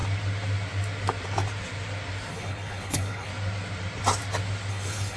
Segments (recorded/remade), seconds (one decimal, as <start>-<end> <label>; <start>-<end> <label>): 0.0-2.3 recorded; 2.3-3.3 remade; 3.3-4.7 recorded; 4.7-5.2 remade